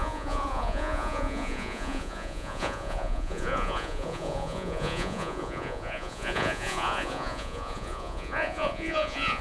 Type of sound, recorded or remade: remade